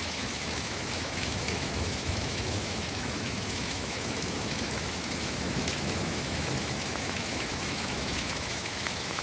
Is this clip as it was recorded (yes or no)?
no